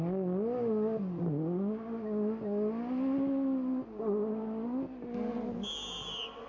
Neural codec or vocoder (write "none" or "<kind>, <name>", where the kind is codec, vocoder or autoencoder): none